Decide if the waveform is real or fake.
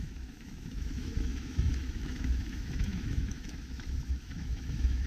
fake